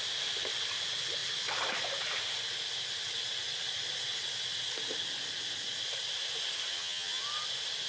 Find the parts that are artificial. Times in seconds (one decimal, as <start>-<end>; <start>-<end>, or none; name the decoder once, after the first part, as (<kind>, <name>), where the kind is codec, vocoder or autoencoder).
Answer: 6.7-7.2 (vocoder, HiFi-GAN)